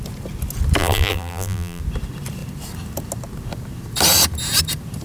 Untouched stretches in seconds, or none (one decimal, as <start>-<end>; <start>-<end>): 0.0-0.8; 1.8-5.0